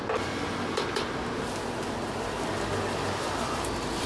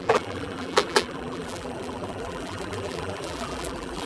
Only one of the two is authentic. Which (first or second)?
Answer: first